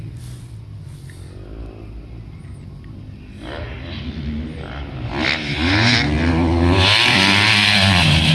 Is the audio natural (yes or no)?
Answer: yes